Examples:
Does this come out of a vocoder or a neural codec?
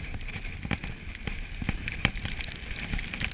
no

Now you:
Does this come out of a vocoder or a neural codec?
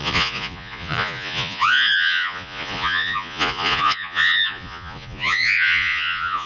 yes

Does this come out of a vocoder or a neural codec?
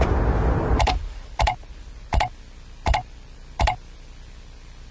no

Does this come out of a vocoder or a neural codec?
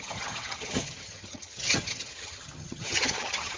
yes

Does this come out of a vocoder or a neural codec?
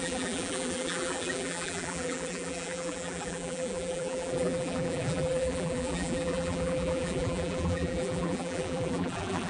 yes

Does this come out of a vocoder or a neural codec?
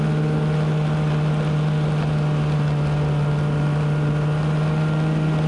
no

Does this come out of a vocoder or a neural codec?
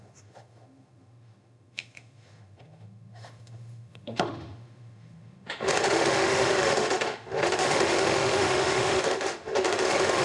yes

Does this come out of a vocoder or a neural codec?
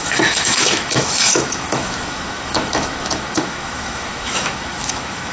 yes